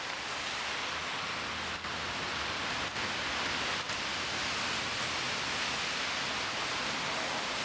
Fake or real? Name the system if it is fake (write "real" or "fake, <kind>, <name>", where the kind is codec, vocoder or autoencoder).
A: real